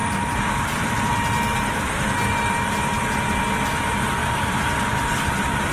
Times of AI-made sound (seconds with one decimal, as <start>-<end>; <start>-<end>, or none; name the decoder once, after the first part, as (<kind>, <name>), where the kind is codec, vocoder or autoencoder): 0.0-3.4 (vocoder, BigVGAN v2); 4.2-5.7